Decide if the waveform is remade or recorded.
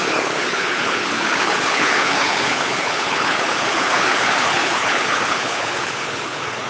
remade